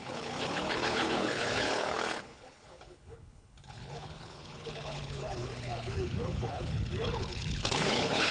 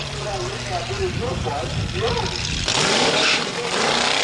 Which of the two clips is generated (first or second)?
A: first